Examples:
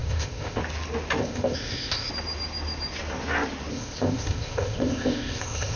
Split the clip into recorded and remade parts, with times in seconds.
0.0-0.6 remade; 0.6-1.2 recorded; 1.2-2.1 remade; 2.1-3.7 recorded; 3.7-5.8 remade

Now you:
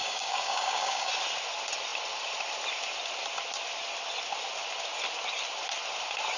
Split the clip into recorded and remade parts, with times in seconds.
0.0-1.1 remade; 1.1-6.4 recorded

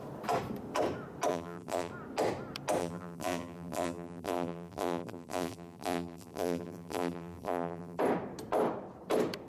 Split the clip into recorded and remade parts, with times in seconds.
0.0-1.3 recorded; 1.3-1.9 remade; 1.9-2.8 recorded; 2.8-8.0 remade; 8.0-9.5 recorded

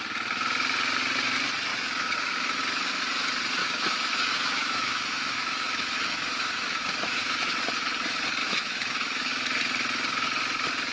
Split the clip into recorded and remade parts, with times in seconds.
0.0-1.7 recorded; 1.7-2.6 remade; 2.6-3.6 recorded; 3.6-7.6 remade; 7.6-8.4 recorded; 8.4-9.3 remade; 9.3-10.9 recorded